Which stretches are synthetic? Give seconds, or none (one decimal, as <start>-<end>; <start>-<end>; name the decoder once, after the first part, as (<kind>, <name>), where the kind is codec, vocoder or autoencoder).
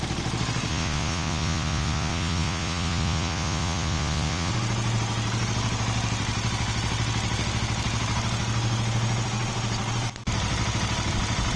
0.7-4.5 (vocoder, Vocos)